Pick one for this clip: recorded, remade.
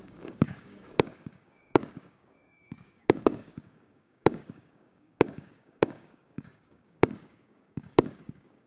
remade